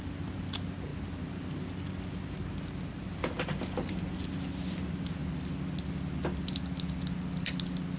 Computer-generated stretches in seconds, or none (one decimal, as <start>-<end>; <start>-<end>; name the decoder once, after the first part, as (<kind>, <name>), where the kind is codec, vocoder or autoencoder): none